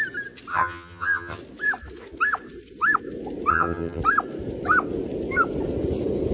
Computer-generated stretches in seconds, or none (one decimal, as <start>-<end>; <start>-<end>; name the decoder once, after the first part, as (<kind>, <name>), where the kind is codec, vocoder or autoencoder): 0.5-1.4 (vocoder, HiFi-GAN); 3.5-4.0